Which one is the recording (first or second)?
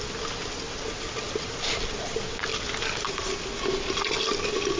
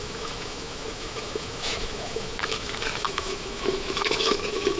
first